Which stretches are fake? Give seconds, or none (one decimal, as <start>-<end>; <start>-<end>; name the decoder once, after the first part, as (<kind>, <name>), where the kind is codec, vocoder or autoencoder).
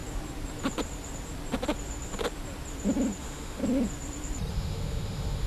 3.2-3.6 (autoencoder, DAC-VAE); 4.5-5.5